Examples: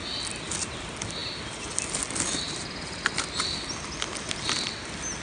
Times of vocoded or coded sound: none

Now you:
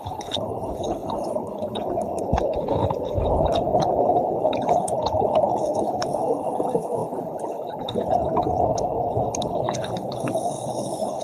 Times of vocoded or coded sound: 0.0-11.2

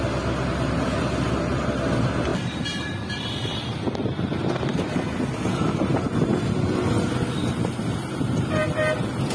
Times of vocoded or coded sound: none

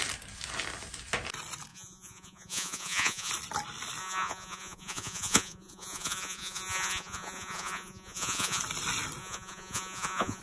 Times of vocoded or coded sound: 1.7-3.3; 4.0-8.6; 9.2-10.4

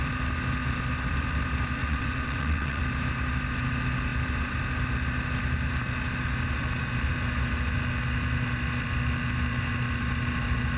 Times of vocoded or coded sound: 1.8-2.8

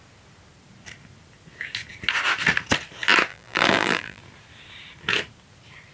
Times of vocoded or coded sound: 3.3-4.2

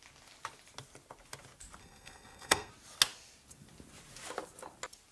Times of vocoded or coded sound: 1.8-2.7

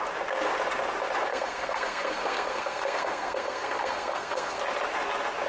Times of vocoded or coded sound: 1.3-4.6